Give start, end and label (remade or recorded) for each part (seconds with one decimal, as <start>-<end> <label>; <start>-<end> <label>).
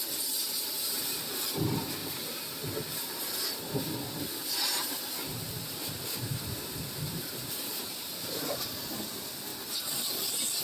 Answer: 0.0-0.4 recorded; 0.4-1.4 remade; 1.4-5.3 recorded; 5.3-8.7 remade; 8.7-10.6 recorded